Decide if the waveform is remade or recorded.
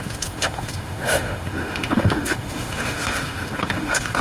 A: remade